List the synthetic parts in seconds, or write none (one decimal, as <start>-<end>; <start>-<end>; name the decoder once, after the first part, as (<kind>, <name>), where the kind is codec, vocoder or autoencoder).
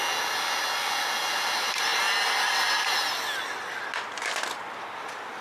none